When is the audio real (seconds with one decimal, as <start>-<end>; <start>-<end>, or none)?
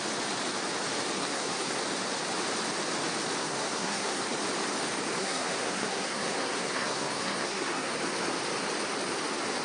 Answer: 0.0-1.2; 1.8-3.4; 4.2-5.2; 8.0-9.6